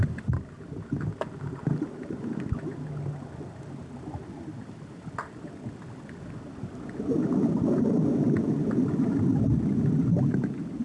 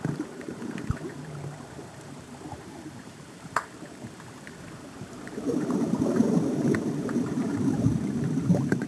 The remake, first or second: second